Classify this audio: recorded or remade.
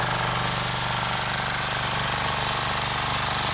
recorded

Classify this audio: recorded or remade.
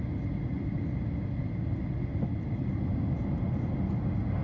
recorded